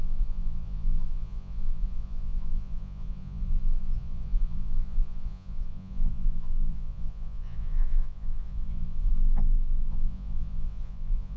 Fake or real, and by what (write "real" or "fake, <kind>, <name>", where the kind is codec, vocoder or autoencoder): fake, vocoder, Vocos